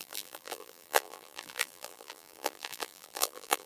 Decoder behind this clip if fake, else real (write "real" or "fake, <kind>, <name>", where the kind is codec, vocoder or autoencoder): fake, vocoder, BigVGAN v2